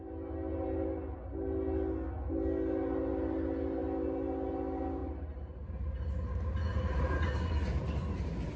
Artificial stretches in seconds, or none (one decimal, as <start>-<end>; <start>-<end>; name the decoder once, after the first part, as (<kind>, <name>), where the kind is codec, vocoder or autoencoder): 5.0-6.1 (vocoder, BigVGAN v2); 6.7-7.5